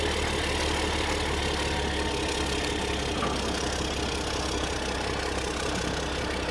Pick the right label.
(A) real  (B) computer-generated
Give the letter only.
A